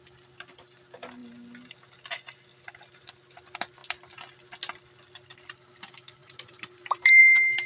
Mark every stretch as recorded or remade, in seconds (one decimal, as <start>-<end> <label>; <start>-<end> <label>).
0.0-6.2 recorded; 6.2-7.2 remade; 7.2-7.7 recorded

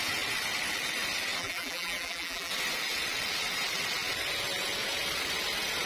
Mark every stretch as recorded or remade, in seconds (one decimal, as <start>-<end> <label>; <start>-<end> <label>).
0.0-1.4 recorded; 1.4-2.5 remade; 2.5-5.9 recorded

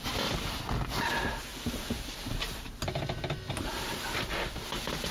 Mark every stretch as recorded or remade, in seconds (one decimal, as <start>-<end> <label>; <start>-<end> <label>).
0.0-1.5 recorded; 1.5-2.7 remade; 2.7-5.1 recorded

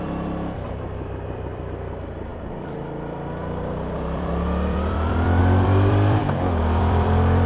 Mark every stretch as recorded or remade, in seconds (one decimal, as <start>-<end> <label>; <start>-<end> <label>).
0.0-6.2 remade; 6.2-6.8 recorded; 6.8-7.5 remade

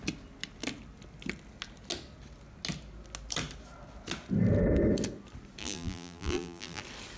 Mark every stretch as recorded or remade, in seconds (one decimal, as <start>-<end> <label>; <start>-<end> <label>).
0.0-5.6 recorded; 5.6-6.8 remade; 6.8-7.2 recorded

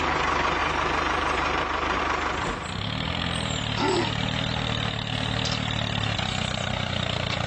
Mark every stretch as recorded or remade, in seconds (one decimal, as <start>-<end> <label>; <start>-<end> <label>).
0.0-0.6 recorded; 0.6-2.0 remade; 2.0-7.5 recorded